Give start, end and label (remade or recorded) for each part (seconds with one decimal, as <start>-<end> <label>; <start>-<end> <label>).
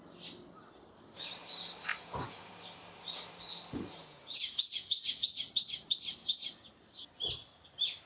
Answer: 0.0-1.9 recorded; 1.9-2.5 remade; 2.5-4.0 recorded; 4.0-5.4 remade; 5.4-6.2 recorded; 6.2-6.7 remade; 6.7-8.1 recorded